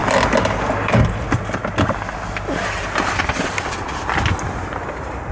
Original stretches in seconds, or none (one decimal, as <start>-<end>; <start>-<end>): 0.0-5.3